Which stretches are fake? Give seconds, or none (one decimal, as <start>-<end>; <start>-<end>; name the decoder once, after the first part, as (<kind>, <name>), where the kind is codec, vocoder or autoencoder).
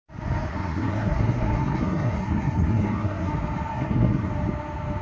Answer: 0.5-3.3 (codec, SNAC); 3.7-4.3